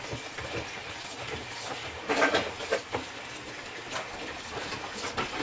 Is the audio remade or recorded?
recorded